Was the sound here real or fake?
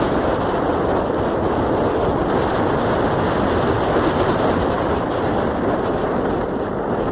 real